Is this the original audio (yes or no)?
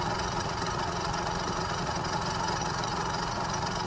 no